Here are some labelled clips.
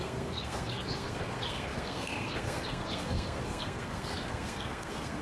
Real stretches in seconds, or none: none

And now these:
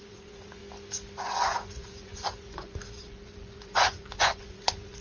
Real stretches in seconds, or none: 0.6-1.2

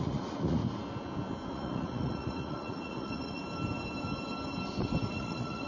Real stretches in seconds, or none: 0.6-1.5; 3.4-5.1

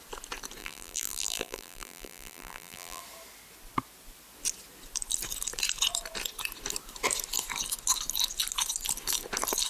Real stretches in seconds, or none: 0.0-0.6; 3.0-9.7

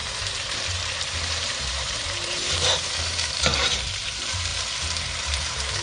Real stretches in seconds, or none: 4.5-5.2

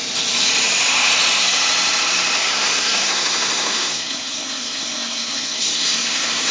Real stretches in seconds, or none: 0.0-2.4

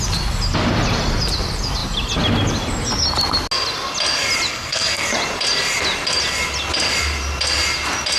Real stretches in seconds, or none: 0.0-4.5; 5.1-8.2